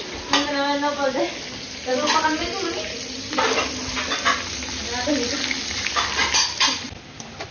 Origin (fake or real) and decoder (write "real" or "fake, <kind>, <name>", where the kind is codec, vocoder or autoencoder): real